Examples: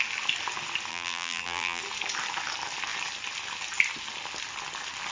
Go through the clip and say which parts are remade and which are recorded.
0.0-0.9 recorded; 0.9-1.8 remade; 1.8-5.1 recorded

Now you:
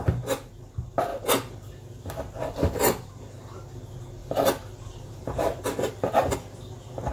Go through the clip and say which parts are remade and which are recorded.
0.0-7.1 recorded

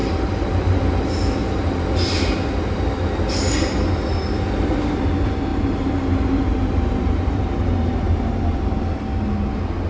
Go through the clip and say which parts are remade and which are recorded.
0.0-0.8 remade; 0.8-1.4 recorded; 1.4-1.9 remade; 1.9-5.5 recorded; 5.5-9.0 remade; 9.0-9.9 recorded

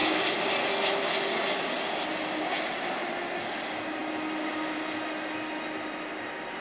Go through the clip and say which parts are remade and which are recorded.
0.0-6.6 recorded

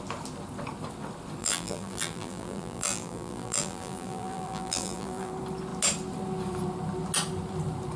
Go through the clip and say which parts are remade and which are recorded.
0.0-1.4 recorded; 1.4-5.3 remade; 5.3-8.0 recorded

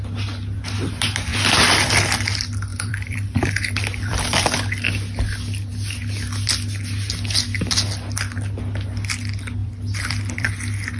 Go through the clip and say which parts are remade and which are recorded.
0.0-1.3 recorded; 1.3-1.9 remade; 1.9-2.7 recorded; 2.7-4.4 remade; 4.4-9.6 recorded; 9.6-10.5 remade; 10.5-11.0 recorded

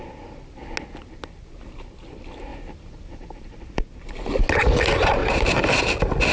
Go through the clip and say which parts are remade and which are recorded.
0.0-2.5 recorded; 2.5-4.4 remade; 4.4-5.2 recorded; 5.2-5.8 remade; 5.8-6.3 recorded